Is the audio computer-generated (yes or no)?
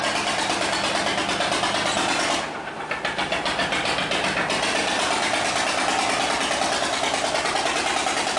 no